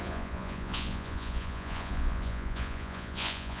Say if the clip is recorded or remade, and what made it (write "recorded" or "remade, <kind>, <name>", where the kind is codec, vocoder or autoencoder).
remade, vocoder, Vocos